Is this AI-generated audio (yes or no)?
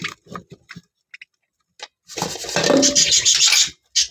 no